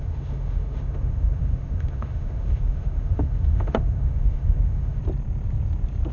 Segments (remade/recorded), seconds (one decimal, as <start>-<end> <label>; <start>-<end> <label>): 0.0-5.0 remade; 5.0-6.1 recorded